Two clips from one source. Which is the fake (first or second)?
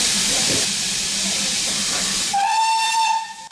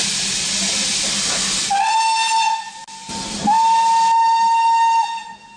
first